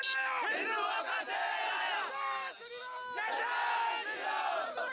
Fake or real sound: real